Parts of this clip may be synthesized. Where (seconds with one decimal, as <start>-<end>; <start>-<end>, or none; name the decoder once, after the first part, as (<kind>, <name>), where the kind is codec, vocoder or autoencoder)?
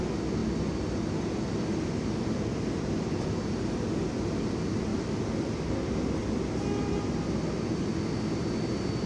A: none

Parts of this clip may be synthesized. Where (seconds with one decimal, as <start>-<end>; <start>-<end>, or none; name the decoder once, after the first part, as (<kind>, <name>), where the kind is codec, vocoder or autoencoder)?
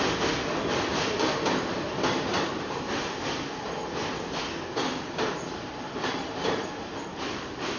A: 2.3-2.8 (vocoder, BigVGAN v2); 4.9-7.8